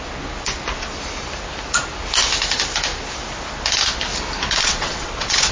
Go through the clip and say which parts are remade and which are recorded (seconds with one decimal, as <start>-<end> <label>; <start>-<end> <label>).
0.0-4.6 recorded; 4.6-5.5 remade